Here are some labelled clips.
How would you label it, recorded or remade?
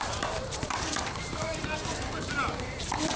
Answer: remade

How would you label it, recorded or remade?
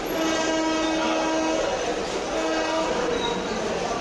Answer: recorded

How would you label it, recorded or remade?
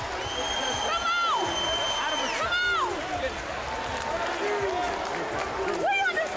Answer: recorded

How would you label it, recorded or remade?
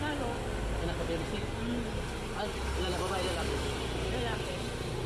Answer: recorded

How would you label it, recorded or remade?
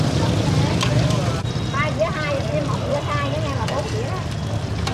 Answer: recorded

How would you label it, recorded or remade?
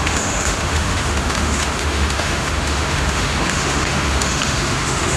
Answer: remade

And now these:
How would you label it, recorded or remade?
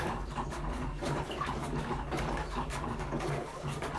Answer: remade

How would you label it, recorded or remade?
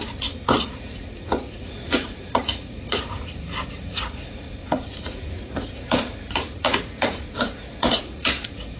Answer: remade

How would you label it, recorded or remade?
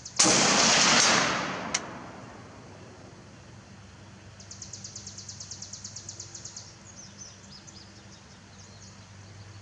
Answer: recorded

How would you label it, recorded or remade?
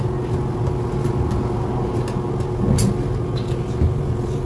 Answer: recorded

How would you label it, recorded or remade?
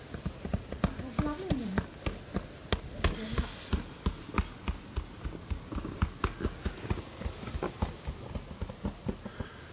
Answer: recorded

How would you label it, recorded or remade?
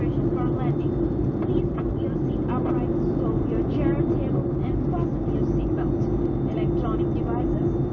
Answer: recorded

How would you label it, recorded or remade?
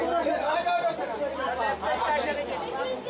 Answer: recorded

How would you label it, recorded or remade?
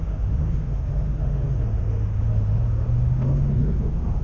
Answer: remade